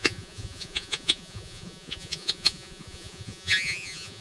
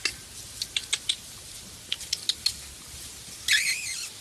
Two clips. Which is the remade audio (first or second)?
first